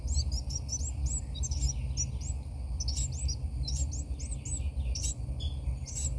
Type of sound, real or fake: real